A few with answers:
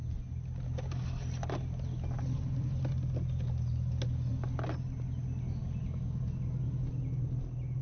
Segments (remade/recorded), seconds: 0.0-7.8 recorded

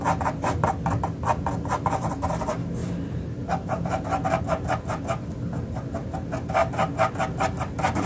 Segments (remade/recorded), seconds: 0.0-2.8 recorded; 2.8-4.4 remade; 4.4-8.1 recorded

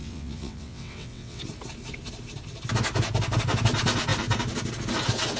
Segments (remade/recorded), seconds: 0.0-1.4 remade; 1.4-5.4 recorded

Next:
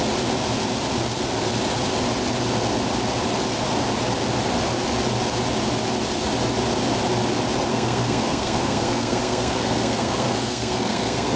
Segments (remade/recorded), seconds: 0.0-7.7 recorded; 7.7-11.4 remade

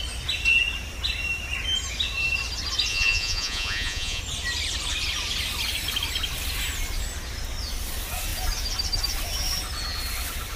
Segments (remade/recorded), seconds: 0.0-2.9 recorded; 2.9-4.2 remade; 4.2-10.6 recorded